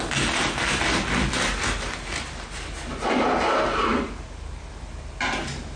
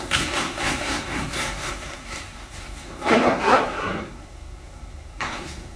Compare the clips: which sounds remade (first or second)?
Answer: second